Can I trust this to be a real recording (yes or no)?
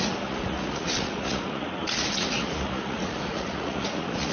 no